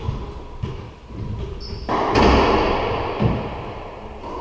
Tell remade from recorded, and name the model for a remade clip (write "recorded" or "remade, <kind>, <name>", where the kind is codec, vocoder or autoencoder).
recorded